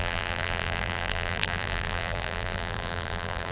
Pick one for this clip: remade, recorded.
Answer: remade